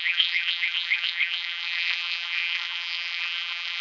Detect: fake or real fake